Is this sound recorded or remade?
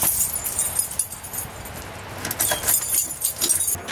recorded